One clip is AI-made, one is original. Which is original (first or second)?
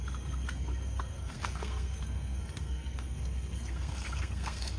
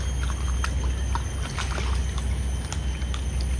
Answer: second